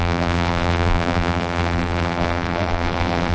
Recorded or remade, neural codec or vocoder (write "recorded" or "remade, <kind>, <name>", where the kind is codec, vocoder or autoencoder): remade, vocoder, BigVGAN v2